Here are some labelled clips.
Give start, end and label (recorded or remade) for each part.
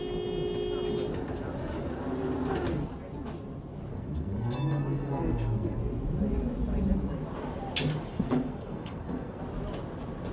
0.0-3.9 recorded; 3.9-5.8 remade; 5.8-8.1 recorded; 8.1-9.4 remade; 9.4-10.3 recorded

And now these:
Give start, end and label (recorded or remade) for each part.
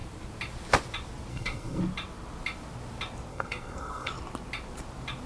0.0-1.3 recorded; 1.3-1.8 remade; 1.8-3.3 recorded; 3.3-4.1 remade; 4.1-5.3 recorded